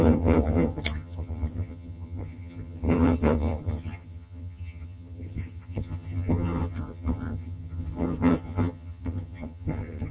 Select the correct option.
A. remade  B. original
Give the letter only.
A